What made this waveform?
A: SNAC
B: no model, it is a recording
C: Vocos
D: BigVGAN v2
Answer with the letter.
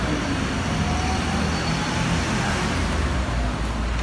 B